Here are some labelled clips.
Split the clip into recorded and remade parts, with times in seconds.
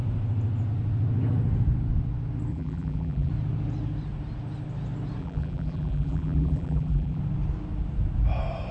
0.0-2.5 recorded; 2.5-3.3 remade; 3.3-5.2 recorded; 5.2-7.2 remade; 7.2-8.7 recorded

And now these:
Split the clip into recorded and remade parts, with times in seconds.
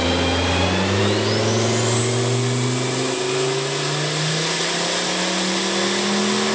0.0-6.5 recorded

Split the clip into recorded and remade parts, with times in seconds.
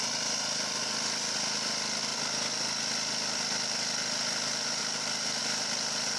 0.0-6.2 recorded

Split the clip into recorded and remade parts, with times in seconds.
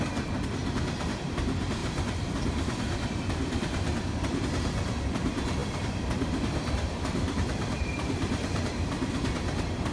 0.0-1.8 recorded; 1.8-4.4 remade; 4.4-5.6 recorded; 5.6-8.9 remade; 8.9-9.9 recorded